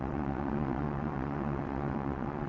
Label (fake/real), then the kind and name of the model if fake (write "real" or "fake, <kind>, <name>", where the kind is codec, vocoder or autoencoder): fake, vocoder, WaveNeXt